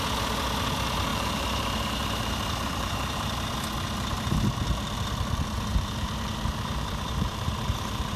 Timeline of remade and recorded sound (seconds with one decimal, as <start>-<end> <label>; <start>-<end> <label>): 0.0-1.1 recorded; 1.1-3.3 remade; 3.3-5.7 recorded; 5.7-8.2 remade